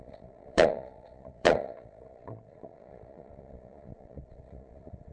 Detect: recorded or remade remade